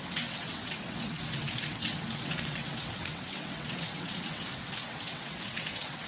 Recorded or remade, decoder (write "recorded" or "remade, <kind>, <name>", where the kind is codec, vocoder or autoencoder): remade, vocoder, WaveNeXt